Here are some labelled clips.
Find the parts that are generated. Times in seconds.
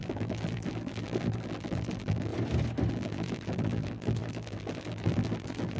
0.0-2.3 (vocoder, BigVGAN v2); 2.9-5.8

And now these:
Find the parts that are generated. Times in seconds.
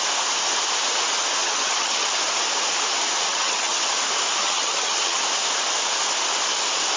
1.4-2.1 (vocoder, HiFi-GAN); 3.3-3.9; 4.4-5.2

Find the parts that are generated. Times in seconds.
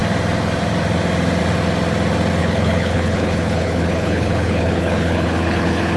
2.4-6.0 (codec, HILCodec)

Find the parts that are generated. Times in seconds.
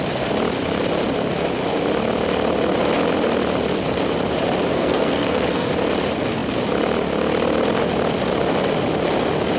4.7-5.7 (codec, SNAC)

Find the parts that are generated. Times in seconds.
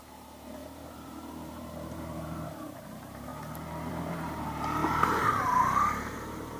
0.0-3.3 (vocoder, BigVGAN v2); 3.9-6.6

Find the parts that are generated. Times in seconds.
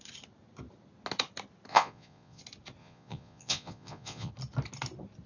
1.7-2.4 (vocoder, Vocos); 2.8-4.3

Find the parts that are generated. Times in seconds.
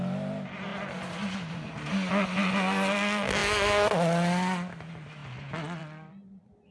none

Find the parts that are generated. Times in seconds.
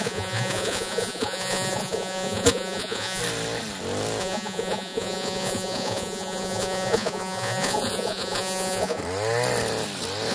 0.0-3.2 (vocoder, Vocos); 4.2-9.0